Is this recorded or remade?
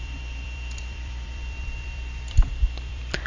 remade